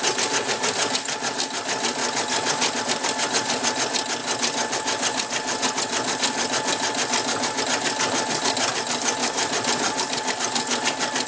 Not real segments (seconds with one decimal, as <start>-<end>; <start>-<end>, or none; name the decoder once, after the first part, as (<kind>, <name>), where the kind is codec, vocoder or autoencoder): 2.0-2.8 (vocoder, BigVGAN v2); 9.2-10.3